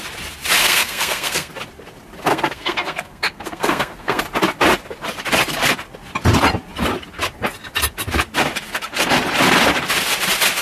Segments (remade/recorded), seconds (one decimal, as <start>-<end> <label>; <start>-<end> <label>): 0.0-0.6 recorded; 0.6-1.5 remade; 1.5-2.3 recorded; 2.3-4.2 remade; 4.2-10.6 recorded